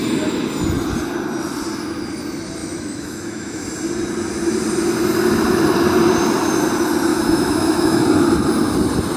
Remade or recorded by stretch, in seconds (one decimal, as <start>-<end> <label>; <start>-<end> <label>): 0.0-2.6 recorded; 2.6-3.6 remade; 3.6-7.1 recorded; 7.1-8.0 remade; 8.0-9.2 recorded